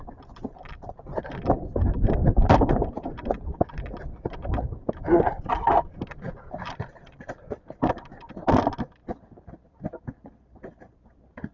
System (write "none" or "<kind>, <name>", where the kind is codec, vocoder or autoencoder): none